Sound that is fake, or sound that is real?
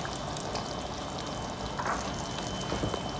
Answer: real